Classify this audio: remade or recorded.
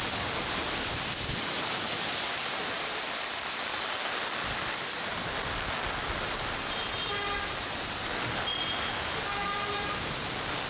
recorded